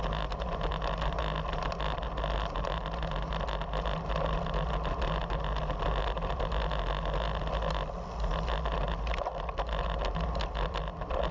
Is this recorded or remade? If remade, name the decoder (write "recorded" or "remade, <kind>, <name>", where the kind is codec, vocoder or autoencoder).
recorded